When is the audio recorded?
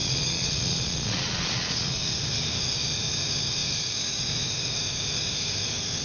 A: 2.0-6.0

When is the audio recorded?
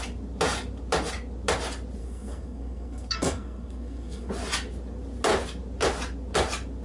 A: 0.0-2.0; 4.3-6.8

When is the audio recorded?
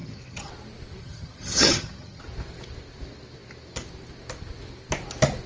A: 0.5-1.0; 2.2-5.5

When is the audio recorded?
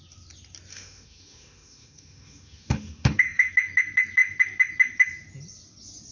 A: 0.0-0.7; 3.5-6.1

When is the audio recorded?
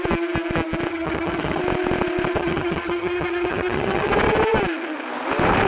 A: 0.0-0.9; 1.6-2.4; 4.1-5.7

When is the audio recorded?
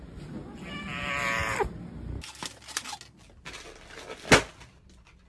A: 0.0-5.3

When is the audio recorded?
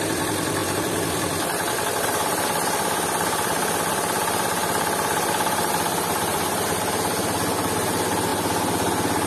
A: 0.0-0.6; 5.7-6.3; 6.9-9.3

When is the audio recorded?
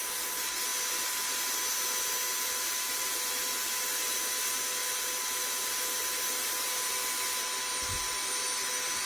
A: 0.0-9.1